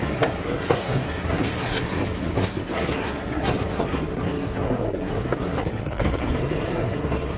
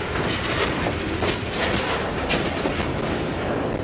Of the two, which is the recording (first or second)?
second